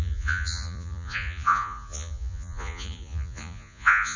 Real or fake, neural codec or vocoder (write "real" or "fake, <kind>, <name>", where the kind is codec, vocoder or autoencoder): fake, vocoder, Vocos